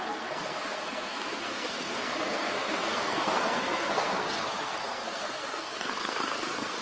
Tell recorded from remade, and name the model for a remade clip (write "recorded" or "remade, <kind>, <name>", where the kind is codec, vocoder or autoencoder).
remade, codec, SNAC